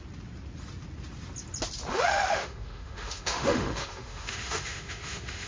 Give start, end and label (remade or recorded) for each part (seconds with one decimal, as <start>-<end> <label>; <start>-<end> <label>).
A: 0.0-1.9 recorded; 1.9-5.5 remade